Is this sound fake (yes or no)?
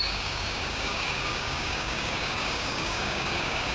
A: yes